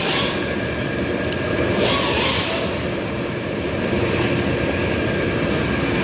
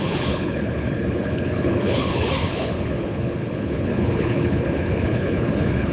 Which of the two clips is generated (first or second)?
second